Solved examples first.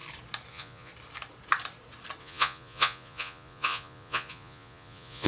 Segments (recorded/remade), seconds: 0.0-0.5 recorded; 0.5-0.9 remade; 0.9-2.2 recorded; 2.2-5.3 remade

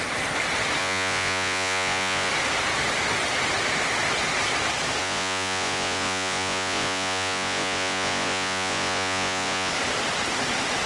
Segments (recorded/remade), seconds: 0.0-0.8 recorded; 0.8-2.3 remade; 2.3-5.0 recorded; 5.0-9.7 remade; 9.7-10.9 recorded